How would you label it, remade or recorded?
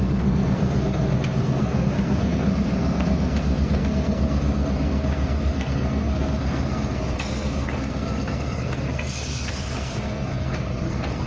remade